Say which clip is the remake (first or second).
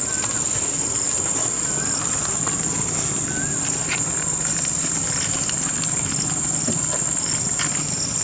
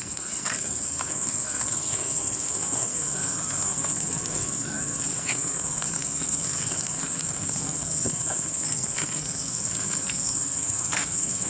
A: second